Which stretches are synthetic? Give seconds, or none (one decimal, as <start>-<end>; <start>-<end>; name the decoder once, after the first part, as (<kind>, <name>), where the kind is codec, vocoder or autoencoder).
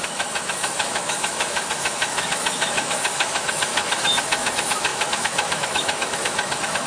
0.0-6.9 (autoencoder, DAC-VAE)